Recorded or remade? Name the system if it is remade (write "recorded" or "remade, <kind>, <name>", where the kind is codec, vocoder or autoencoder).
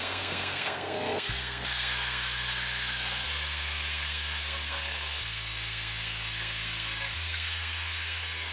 remade, codec, SNAC